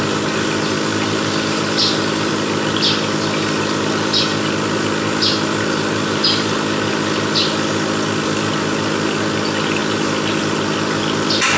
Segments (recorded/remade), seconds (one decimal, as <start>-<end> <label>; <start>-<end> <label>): 0.0-0.9 recorded; 0.9-2.3 remade; 2.3-9.8 recorded; 9.8-10.4 remade; 10.4-11.6 recorded